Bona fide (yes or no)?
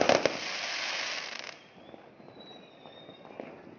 yes